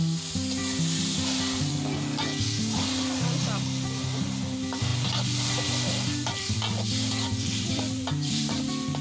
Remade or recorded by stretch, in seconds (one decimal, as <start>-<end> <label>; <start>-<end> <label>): 0.0-0.6 recorded; 0.6-1.7 remade; 1.7-4.9 recorded; 4.9-8.6 remade; 8.6-9.0 recorded